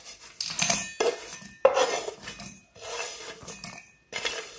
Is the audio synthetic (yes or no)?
no